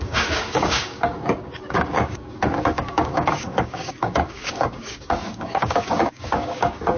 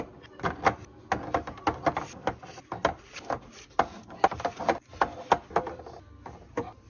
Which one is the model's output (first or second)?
first